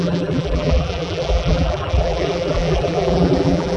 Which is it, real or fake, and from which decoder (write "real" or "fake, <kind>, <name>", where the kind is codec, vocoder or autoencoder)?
fake, vocoder, BigVGAN v2